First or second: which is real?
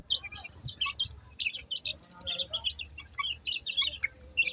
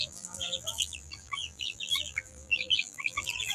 first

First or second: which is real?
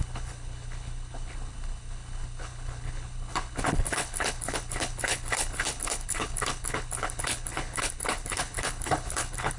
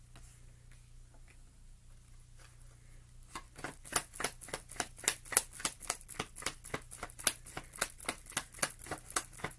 second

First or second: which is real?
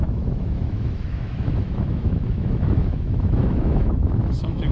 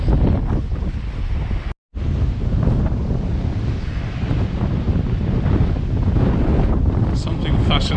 second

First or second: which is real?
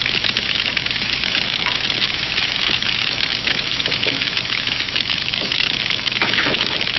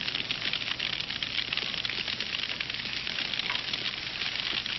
second